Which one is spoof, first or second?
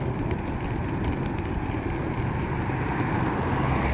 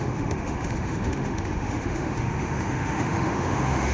second